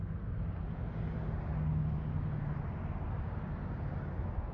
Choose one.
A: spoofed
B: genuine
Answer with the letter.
B